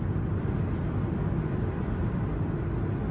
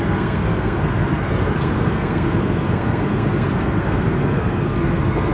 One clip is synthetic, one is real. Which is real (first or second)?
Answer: first